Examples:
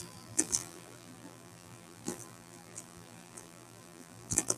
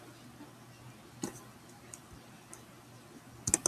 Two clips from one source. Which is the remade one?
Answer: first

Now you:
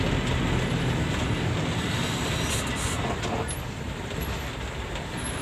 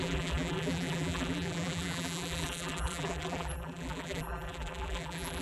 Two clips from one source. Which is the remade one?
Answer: second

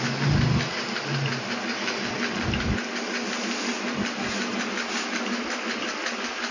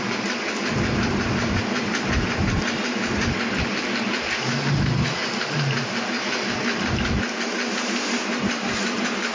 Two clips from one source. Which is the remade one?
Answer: second